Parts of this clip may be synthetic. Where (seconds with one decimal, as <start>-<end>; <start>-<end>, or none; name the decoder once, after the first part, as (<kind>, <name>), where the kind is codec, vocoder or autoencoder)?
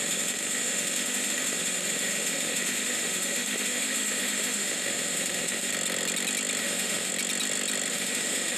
0.0-5.7 (autoencoder, DAC-VAE); 6.6-7.1; 7.9-8.6